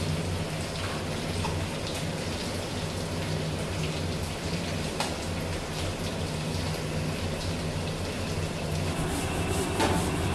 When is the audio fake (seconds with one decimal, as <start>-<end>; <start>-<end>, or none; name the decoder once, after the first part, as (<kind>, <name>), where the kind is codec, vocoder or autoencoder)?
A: none